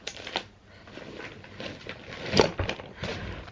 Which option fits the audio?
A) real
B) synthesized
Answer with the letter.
A